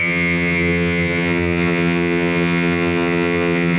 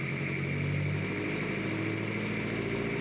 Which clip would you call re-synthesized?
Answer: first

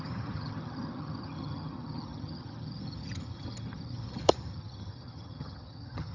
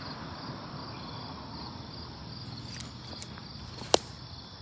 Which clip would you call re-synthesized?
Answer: first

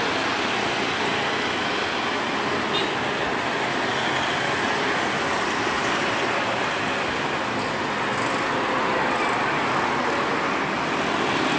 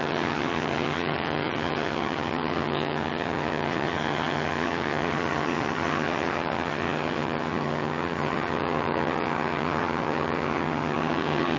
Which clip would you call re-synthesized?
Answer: second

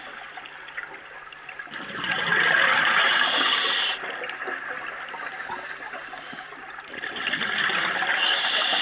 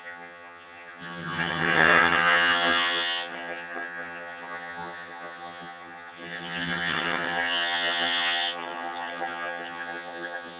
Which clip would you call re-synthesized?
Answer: second